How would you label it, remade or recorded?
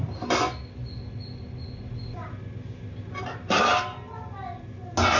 recorded